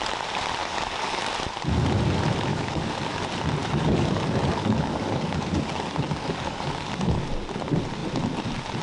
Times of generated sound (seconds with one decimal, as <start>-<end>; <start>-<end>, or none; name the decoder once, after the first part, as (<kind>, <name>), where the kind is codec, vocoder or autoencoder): 0.6-1.3 (codec, DAC); 2.5-3.2; 3.6-7.3